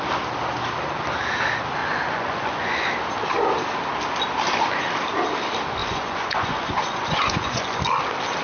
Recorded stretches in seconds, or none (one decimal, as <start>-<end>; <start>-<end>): 0.0-1.8; 2.9-5.8; 7.8-8.4